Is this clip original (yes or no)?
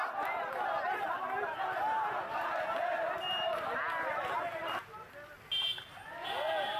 yes